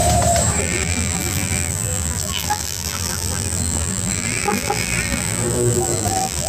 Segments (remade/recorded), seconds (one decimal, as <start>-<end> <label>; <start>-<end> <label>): 0.0-0.6 recorded; 0.6-6.5 remade